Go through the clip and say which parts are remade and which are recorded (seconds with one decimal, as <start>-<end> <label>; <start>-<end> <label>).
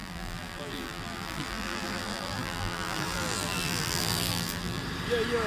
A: 0.0-4.8 remade; 4.8-5.5 recorded